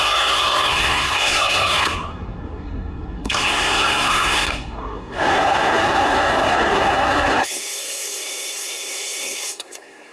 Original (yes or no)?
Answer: no